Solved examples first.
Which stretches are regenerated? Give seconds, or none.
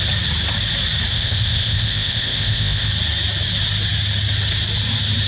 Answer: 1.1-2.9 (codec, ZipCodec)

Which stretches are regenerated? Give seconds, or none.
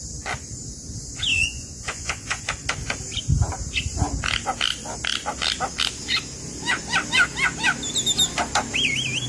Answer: 1.3-2.4 (vocoder, Vocos)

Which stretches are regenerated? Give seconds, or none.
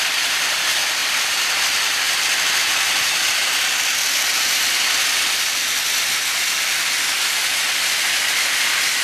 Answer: 1.0-1.6 (vocoder, BigVGAN v2); 3.4-5.2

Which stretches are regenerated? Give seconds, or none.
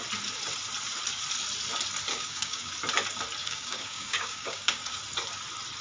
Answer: 2.1-2.7 (codec, DAC); 3.4-5.0